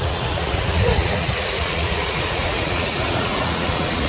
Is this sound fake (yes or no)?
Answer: yes